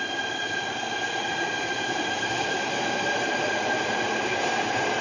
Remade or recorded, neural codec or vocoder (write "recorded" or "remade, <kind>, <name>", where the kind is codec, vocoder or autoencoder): remade, vocoder, BigVGAN v2